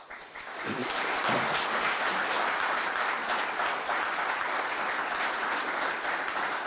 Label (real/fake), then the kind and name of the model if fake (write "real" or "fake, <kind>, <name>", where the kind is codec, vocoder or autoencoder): real